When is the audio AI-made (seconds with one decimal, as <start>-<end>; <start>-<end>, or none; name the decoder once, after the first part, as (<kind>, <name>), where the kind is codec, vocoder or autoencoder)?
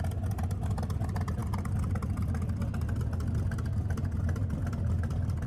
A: none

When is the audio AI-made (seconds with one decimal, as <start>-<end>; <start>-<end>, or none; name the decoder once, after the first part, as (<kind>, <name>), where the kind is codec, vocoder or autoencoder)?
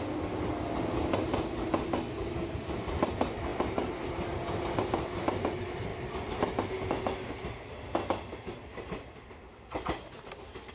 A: none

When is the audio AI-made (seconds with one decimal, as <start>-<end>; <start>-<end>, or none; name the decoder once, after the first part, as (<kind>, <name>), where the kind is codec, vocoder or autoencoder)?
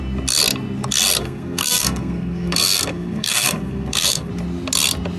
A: 1.2-4.3 (codec, SNAC)